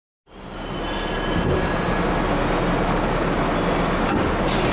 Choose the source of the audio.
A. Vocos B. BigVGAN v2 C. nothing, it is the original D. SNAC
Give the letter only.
C